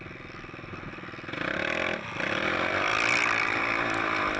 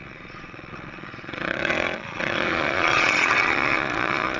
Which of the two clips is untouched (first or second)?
first